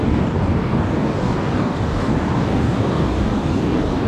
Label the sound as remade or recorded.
remade